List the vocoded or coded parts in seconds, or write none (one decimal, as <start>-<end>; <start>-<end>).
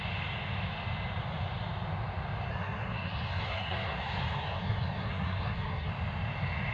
2.5-5.9